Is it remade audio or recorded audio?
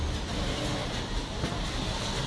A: recorded